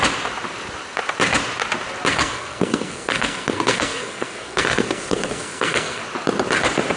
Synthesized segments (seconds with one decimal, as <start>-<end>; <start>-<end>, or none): 2.1-6.0